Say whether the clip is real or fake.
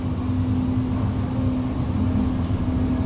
real